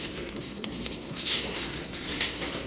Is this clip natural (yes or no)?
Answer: no